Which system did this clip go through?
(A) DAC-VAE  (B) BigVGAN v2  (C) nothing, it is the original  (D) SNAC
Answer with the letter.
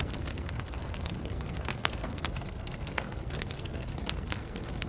D